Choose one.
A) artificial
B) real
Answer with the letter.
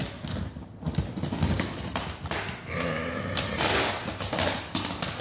B